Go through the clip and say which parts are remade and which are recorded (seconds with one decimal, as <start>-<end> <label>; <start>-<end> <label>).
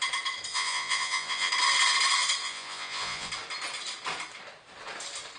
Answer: 0.0-0.5 recorded; 0.5-1.5 remade; 1.5-2.4 recorded; 2.4-3.3 remade; 3.3-5.4 recorded